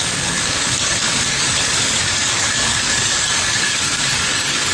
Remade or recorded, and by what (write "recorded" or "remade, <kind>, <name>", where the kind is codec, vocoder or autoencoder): remade, codec, DAC